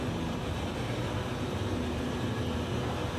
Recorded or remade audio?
recorded